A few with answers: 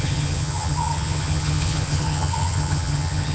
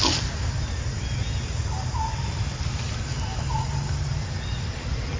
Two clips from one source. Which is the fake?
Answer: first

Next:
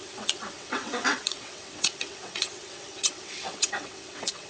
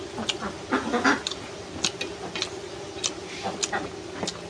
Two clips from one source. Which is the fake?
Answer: first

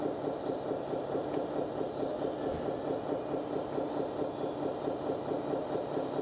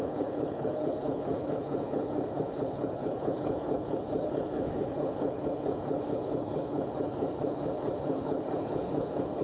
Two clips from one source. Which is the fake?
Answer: second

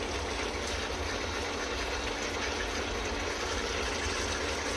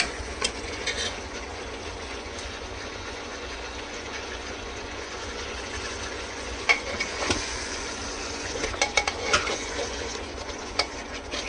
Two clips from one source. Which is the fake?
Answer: second